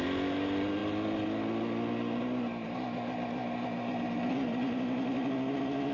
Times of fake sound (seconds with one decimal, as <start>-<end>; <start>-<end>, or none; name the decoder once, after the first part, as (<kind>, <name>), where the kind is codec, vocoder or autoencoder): none